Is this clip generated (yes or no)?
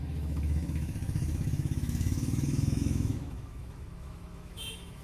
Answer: yes